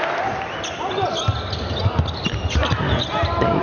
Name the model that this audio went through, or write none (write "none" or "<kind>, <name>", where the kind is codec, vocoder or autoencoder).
none